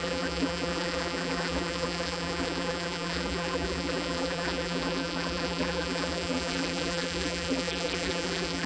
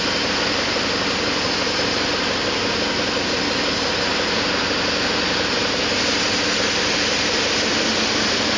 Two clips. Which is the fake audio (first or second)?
first